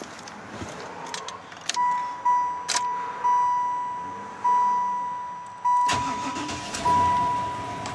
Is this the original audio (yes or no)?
yes